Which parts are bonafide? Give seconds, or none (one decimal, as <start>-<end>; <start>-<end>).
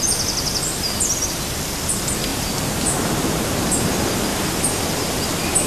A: 0.0-2.3; 3.5-4.3; 4.8-5.7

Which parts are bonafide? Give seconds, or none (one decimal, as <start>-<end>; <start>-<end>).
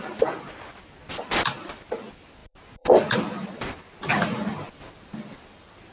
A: none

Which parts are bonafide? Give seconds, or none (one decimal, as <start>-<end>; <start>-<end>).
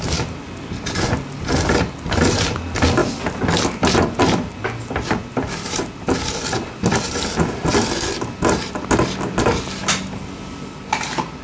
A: 0.0-11.4